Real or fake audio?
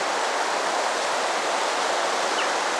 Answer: real